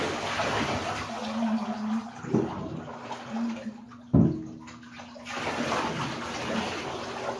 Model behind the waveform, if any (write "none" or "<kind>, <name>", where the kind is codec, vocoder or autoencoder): none